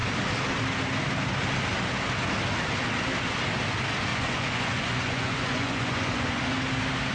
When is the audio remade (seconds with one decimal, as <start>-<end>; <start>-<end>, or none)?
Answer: 4.1-6.4